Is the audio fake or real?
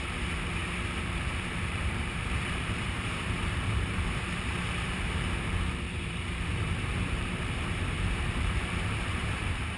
fake